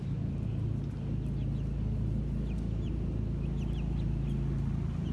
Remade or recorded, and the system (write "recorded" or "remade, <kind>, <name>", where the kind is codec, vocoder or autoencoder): recorded